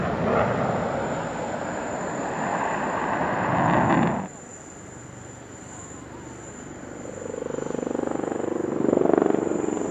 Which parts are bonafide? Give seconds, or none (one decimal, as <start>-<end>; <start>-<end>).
0.0-2.5; 3.5-9.9